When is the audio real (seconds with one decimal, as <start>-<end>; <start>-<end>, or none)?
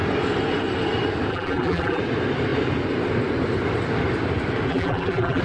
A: 0.0-1.3; 2.0-4.7